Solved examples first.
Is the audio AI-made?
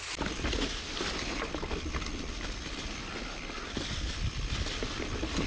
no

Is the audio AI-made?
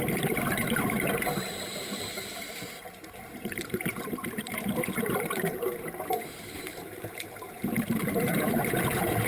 yes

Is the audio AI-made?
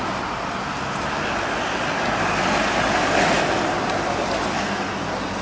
no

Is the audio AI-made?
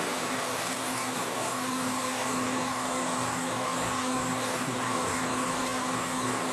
yes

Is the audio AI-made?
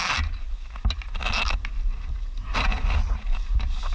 no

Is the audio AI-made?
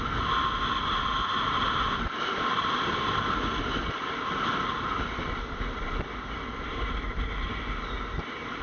no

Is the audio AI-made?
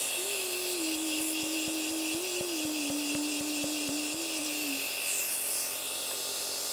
no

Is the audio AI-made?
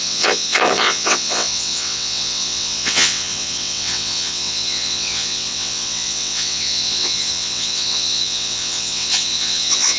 yes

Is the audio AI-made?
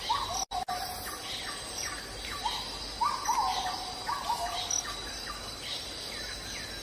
no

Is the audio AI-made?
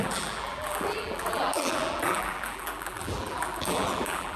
yes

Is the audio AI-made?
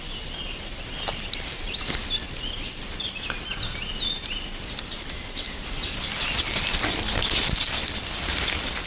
no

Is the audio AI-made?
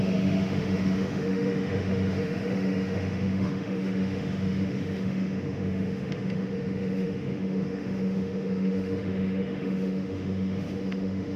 yes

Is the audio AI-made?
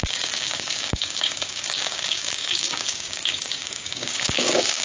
yes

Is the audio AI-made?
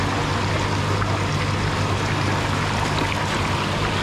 no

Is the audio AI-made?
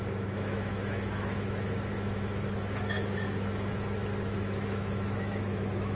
yes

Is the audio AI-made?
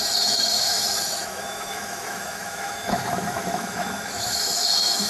yes